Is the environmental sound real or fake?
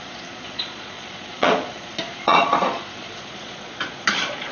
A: fake